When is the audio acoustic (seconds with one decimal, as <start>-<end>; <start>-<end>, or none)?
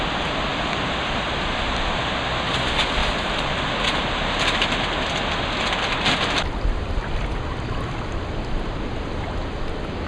0.0-0.5; 2.0-3.0; 3.6-10.1